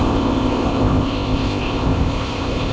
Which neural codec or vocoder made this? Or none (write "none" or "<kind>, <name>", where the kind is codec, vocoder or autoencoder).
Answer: codec, ZipCodec